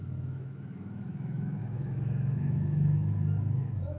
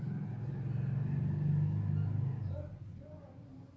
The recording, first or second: second